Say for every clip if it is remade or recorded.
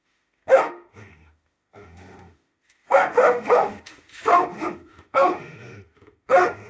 remade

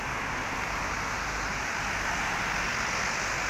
recorded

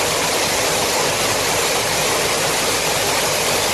recorded